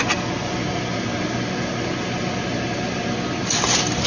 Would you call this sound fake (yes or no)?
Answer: no